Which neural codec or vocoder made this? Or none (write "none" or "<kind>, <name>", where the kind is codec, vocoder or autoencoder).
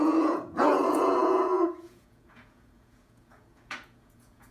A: vocoder, Vocos